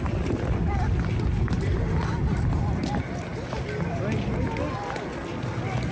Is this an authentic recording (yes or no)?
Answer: yes